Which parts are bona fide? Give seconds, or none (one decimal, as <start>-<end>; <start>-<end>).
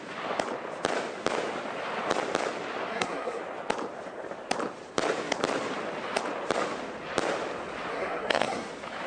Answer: 0.0-2.9; 3.4-7.9; 8.7-9.1